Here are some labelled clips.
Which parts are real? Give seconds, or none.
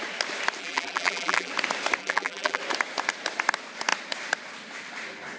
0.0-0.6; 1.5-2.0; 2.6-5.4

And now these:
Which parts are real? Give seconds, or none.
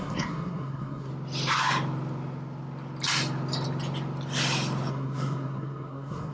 1.1-4.9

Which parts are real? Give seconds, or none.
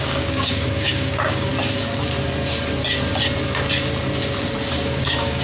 1.5-4.7